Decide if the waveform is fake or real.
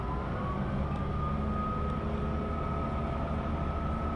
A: real